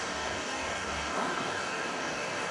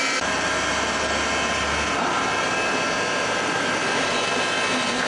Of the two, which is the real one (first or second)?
second